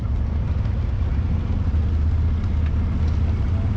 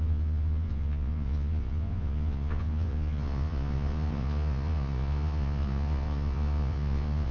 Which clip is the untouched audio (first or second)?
first